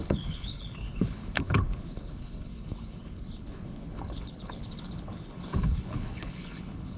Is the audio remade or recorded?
remade